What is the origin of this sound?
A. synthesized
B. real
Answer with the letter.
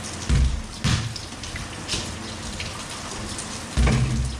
B